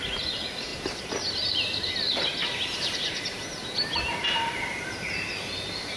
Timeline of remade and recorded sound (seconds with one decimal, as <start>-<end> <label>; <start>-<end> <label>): 0.0-0.7 recorded; 0.7-1.9 remade; 1.9-2.4 recorded; 2.4-6.0 remade